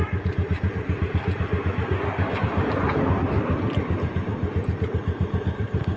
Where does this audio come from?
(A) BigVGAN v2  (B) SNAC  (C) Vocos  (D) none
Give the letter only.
D